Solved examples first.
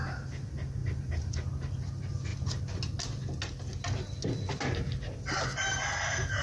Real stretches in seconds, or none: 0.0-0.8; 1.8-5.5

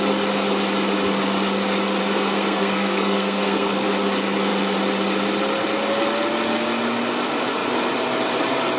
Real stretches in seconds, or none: 0.0-2.0; 3.7-8.8

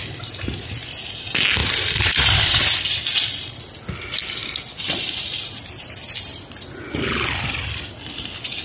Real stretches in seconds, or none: 0.0-1.6; 2.6-4.4; 4.9-8.6

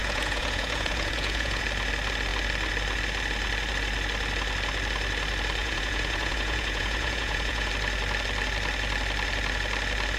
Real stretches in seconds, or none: 1.6-5.6; 7.7-10.2

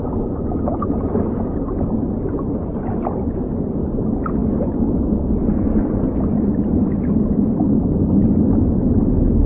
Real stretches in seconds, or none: 0.0-9.5

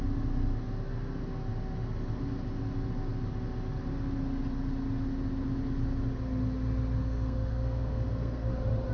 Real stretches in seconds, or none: 0.0-7.0; 8.5-8.9